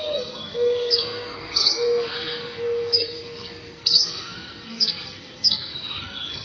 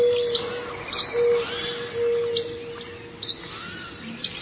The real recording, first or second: second